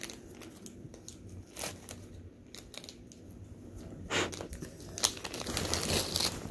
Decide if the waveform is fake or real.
real